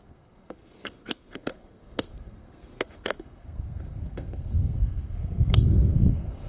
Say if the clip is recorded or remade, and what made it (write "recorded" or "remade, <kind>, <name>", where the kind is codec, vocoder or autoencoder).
remade, codec, SNAC